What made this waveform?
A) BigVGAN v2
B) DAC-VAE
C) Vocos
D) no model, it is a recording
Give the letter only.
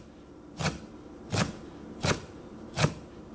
A